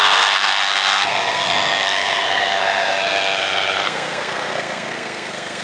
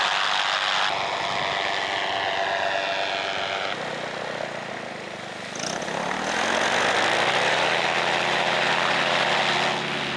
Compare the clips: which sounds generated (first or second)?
first